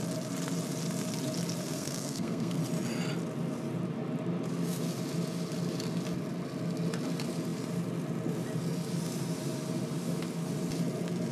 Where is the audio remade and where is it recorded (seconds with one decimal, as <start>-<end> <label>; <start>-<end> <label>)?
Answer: 0.0-1.6 recorded; 1.6-2.6 remade; 2.6-11.3 recorded